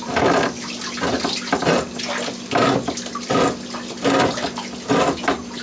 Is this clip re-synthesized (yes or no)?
no